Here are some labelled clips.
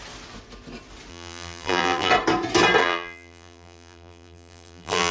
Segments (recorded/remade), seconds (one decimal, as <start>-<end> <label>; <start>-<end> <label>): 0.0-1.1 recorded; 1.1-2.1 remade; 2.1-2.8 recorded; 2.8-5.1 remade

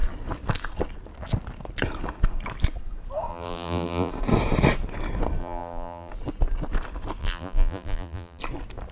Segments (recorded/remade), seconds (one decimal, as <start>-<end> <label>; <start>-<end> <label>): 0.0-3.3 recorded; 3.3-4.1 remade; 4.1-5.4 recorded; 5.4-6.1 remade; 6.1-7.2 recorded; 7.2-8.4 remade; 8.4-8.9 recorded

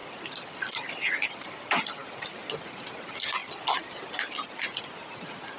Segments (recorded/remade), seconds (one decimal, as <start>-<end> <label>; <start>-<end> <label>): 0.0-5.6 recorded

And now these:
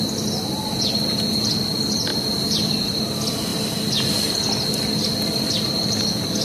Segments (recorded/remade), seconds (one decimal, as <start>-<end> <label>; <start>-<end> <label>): 0.0-2.1 recorded; 2.1-3.0 remade; 3.0-6.4 recorded

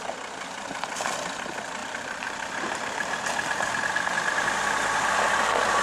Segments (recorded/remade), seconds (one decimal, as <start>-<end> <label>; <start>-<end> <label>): 0.0-1.8 recorded; 1.8-5.3 remade; 5.3-5.8 recorded

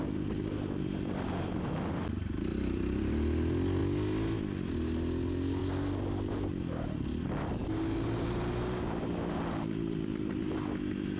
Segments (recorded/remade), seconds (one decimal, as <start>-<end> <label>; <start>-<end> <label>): 0.0-2.5 recorded; 2.5-3.1 remade; 3.1-11.2 recorded

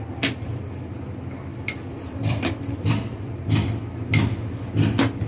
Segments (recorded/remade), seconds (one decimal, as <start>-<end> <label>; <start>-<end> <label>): 0.0-1.5 recorded; 1.5-2.9 remade; 2.9-5.3 recorded

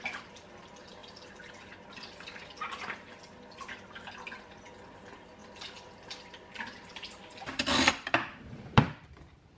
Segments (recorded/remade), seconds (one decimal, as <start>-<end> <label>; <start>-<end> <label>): 0.0-9.6 recorded